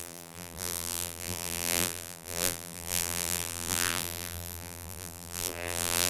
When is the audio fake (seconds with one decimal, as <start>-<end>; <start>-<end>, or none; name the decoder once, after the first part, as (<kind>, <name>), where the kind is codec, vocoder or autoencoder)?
0.0-6.1 (vocoder, BigVGAN v2)